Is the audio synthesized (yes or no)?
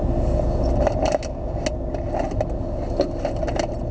no